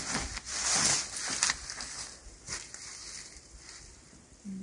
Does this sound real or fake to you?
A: real